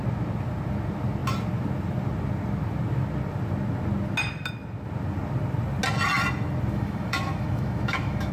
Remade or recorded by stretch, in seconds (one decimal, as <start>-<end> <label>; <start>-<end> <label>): 0.0-6.7 recorded; 6.7-8.3 remade